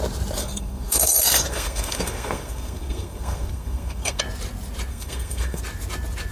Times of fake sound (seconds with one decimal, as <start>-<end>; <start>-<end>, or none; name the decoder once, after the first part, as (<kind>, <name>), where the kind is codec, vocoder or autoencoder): 0.4-4.2 (codec, SNAC); 4.9-5.6